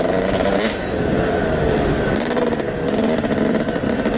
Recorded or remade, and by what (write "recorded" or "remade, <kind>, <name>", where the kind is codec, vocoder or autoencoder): recorded